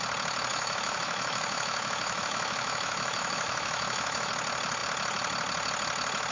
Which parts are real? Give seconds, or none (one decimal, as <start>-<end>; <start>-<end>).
0.0-0.5; 4.3-6.3